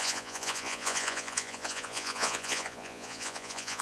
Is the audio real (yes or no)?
no